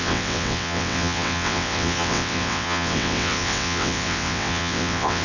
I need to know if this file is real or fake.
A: fake